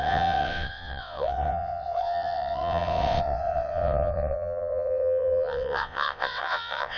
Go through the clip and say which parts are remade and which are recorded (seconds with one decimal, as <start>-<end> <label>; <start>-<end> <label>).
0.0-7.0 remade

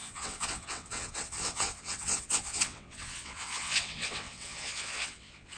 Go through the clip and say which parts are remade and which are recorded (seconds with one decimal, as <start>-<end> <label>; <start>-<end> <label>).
0.0-5.6 remade

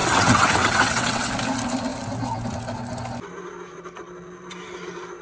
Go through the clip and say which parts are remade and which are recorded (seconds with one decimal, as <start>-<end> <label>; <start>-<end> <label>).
0.0-1.3 remade; 1.3-5.2 recorded

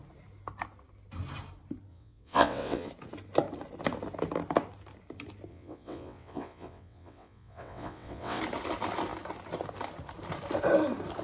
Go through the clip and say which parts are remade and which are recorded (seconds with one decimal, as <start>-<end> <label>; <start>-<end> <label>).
0.0-1.9 recorded; 1.9-2.9 remade; 2.9-5.5 recorded; 5.5-8.4 remade; 8.4-11.2 recorded

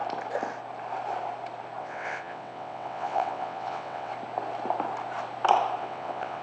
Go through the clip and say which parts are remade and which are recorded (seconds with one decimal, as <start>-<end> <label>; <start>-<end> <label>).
0.0-1.8 recorded; 1.8-4.1 remade; 4.1-5.8 recorded; 5.8-6.4 remade